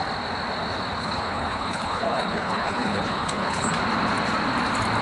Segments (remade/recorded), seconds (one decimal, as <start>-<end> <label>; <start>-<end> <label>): 0.0-1.0 recorded; 1.0-3.7 remade; 3.7-5.0 recorded